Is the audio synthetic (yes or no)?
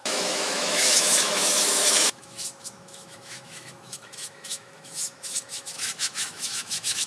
yes